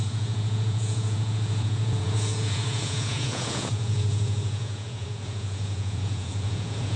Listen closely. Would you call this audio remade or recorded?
remade